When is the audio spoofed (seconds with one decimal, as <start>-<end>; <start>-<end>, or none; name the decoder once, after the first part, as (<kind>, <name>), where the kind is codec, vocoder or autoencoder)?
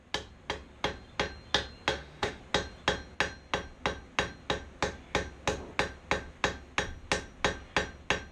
1.9-2.4 (autoencoder, DAC-VAE)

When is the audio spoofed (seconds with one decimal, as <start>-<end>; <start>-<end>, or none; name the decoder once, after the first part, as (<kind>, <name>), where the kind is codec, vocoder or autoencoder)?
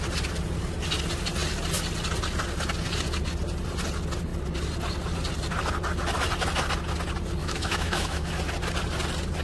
7.4-8.3 (autoencoder, DAC-VAE)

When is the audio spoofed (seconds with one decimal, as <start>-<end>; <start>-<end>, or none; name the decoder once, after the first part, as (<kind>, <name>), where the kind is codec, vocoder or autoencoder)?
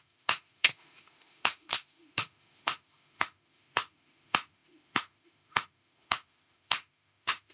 0.0-7.5 (autoencoder, DAC-VAE)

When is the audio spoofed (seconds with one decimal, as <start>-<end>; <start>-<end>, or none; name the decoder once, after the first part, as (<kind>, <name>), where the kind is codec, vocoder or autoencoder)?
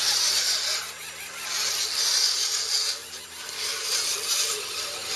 none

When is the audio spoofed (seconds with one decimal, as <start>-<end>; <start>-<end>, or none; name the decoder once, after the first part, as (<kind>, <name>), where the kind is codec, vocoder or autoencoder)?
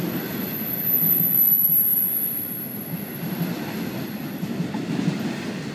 none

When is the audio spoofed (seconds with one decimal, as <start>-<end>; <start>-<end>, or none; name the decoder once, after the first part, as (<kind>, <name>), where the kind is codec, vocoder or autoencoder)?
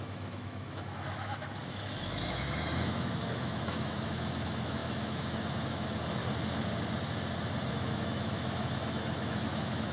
0.0-6.2 (autoencoder, DAC-VAE); 7.7-9.9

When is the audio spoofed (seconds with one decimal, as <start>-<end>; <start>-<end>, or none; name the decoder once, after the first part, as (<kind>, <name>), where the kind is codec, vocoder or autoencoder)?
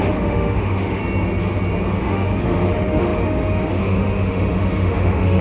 0.0-1.0 (autoencoder, DAC-VAE); 2.0-5.4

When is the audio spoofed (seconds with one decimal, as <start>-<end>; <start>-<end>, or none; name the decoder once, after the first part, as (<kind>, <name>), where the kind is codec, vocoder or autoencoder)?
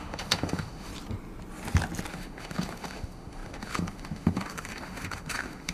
0.0-0.9 (autoencoder, DAC-VAE); 2.1-5.7